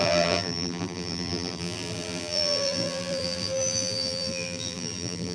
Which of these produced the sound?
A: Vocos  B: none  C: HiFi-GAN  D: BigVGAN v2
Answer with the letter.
D